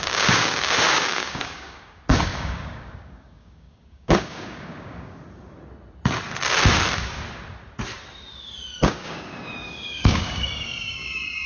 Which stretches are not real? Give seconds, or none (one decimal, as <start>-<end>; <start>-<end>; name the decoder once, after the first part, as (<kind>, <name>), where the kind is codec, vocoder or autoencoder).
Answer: 0.0-5.2 (codec, DAC); 8.8-11.5